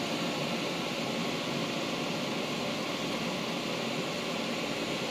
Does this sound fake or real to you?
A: real